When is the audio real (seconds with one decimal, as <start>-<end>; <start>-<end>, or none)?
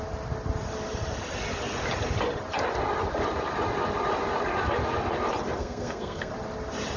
0.0-5.6; 6.3-7.0